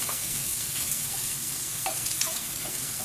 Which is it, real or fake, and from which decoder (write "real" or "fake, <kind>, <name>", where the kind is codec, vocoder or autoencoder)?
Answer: fake, codec, SNAC